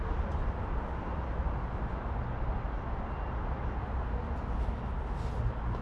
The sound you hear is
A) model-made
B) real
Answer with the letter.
B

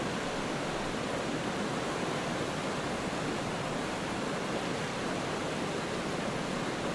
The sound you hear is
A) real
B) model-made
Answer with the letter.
A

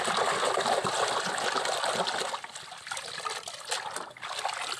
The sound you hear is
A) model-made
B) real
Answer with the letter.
B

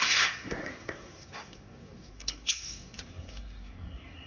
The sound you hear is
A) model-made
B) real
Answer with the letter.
A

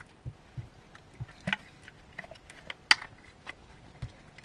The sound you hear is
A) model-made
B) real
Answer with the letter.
B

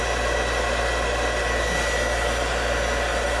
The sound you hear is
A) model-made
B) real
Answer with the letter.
B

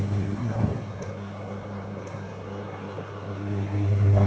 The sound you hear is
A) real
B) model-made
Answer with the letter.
B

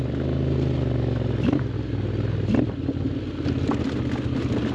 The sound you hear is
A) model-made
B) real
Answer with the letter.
B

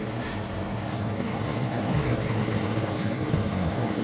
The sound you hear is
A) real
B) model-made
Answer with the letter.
B